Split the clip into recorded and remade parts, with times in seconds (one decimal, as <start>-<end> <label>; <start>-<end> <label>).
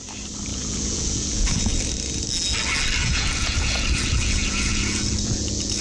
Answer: 0.0-0.5 recorded; 0.5-1.8 remade; 1.8-3.0 recorded; 3.0-5.8 remade